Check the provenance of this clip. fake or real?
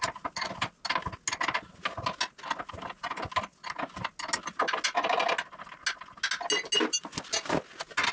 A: real